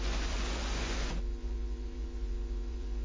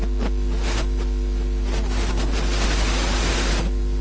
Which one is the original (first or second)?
second